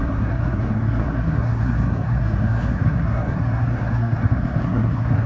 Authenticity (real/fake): fake